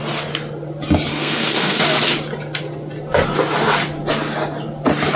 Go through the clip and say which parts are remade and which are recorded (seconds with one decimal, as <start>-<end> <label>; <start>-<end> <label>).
0.0-1.1 recorded; 1.1-1.8 remade; 1.8-5.2 recorded